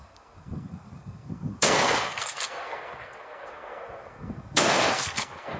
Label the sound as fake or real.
fake